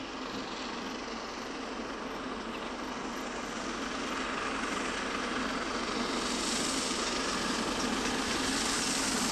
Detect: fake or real real